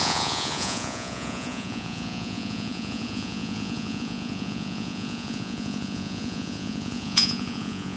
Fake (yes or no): yes